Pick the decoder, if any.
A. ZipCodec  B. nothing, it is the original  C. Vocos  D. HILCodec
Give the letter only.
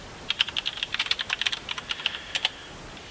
B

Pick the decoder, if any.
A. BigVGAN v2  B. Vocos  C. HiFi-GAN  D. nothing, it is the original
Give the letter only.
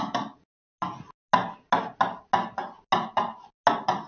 D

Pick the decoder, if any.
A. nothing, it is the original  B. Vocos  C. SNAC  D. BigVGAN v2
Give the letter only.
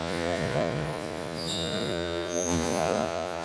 B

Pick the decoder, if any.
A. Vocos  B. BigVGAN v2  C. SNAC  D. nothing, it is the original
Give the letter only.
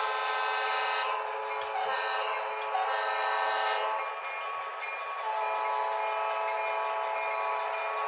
D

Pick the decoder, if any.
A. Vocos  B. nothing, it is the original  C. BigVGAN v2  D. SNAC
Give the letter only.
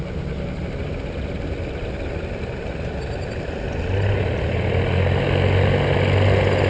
B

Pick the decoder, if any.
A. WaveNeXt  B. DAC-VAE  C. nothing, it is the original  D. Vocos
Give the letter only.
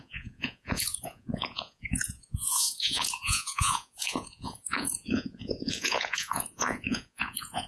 D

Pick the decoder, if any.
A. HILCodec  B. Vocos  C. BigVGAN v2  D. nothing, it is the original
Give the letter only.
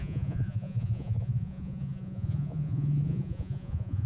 B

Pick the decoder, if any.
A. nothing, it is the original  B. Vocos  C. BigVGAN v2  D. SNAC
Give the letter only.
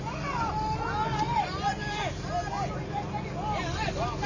A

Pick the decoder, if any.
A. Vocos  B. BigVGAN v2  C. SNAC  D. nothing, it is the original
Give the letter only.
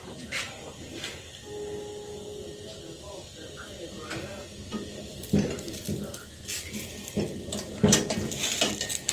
D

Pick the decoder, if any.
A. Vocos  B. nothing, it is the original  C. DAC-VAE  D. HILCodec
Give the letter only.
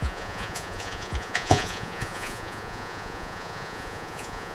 A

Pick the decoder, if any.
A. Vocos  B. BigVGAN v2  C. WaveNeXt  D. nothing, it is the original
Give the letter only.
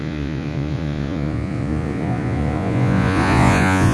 A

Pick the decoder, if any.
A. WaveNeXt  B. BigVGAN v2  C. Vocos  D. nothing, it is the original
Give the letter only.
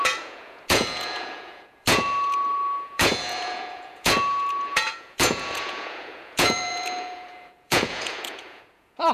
C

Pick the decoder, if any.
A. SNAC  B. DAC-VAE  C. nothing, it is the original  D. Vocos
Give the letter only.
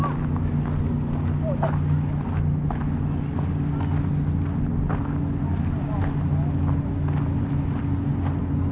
C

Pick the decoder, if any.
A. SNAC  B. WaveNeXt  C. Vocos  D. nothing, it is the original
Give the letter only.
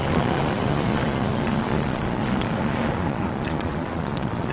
C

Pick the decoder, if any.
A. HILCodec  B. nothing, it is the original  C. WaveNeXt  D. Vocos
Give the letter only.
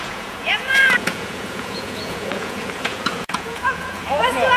D